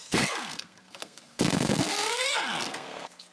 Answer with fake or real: fake